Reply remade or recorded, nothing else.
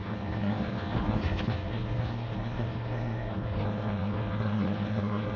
remade